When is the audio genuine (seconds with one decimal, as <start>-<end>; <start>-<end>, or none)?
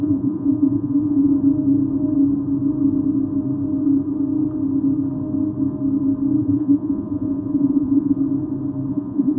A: 1.3-6.4; 8.2-8.9